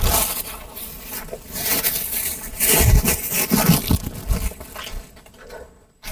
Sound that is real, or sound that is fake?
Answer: real